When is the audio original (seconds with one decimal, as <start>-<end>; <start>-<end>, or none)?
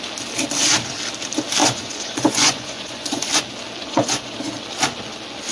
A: 0.0-1.6; 3.4-3.8; 4.5-5.5